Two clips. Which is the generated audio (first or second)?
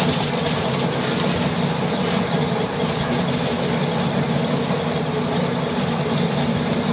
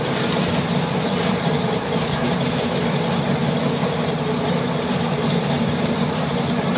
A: second